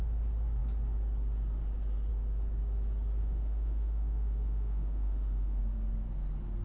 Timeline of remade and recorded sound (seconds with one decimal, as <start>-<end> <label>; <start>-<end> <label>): 0.0-3.2 recorded; 3.2-5.6 remade; 5.6-6.6 recorded